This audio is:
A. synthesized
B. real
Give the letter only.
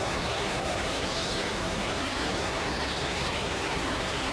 A